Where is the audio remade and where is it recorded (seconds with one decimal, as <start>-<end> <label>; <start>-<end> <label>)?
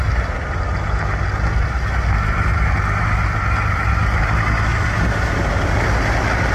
0.0-6.5 recorded